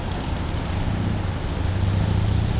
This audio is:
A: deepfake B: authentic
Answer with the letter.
B